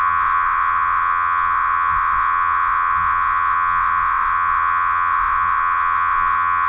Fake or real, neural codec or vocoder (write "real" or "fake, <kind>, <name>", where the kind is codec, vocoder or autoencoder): fake, vocoder, WaveNeXt